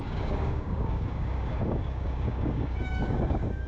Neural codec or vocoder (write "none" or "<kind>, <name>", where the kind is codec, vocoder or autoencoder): codec, DAC